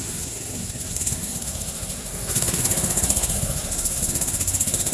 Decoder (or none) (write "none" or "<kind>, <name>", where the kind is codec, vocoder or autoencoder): codec, SNAC